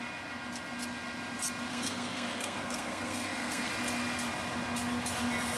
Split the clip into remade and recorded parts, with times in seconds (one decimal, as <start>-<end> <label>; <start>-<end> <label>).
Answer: 0.0-1.7 recorded; 1.7-3.7 remade; 3.7-5.6 recorded